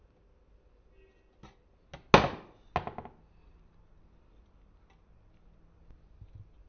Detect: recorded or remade recorded